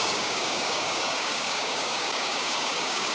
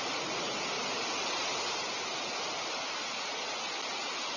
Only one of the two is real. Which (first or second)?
second